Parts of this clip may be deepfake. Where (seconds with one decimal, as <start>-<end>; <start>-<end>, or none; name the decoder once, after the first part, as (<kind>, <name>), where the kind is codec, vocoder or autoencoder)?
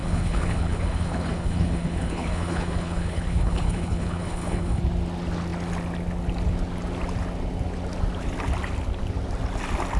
0.0-4.8 (codec, HILCodec)